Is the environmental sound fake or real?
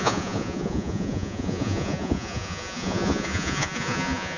fake